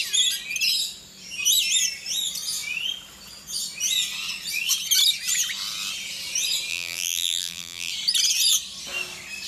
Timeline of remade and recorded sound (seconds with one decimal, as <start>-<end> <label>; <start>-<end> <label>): 0.0-6.7 recorded; 6.7-7.9 remade; 7.9-9.5 recorded